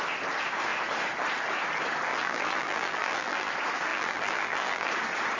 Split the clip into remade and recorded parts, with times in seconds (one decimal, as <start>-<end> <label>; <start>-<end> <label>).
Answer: 0.0-2.1 recorded; 2.1-3.5 remade; 3.5-3.9 recorded; 3.9-4.9 remade; 4.9-5.4 recorded